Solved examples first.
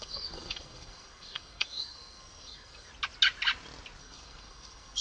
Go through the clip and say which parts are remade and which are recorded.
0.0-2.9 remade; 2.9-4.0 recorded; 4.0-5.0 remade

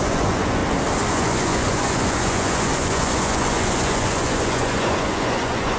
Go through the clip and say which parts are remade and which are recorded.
0.0-0.6 remade; 0.6-1.1 recorded; 1.1-5.8 remade